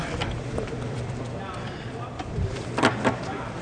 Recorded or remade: remade